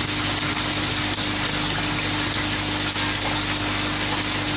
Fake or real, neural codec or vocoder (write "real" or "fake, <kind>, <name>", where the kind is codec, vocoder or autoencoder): real